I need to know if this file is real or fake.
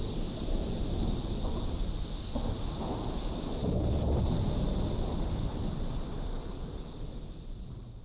real